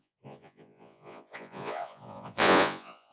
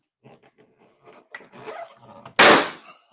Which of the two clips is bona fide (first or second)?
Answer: second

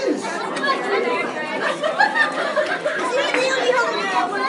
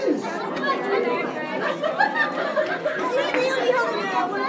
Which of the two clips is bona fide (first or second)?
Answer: second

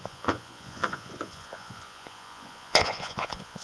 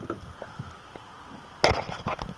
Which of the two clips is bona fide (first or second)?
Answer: second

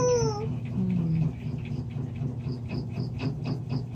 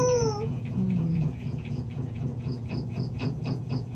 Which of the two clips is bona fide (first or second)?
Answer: first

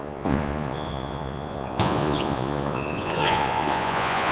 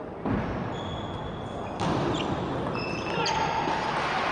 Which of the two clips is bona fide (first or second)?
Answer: second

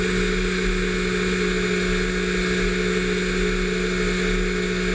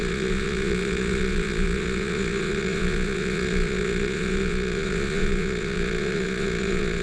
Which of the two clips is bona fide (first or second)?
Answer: first